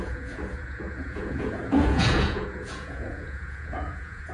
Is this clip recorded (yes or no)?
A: no